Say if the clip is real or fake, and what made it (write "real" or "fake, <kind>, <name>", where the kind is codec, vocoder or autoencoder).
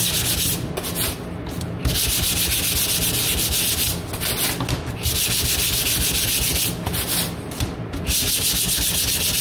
real